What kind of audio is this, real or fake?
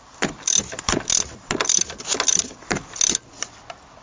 real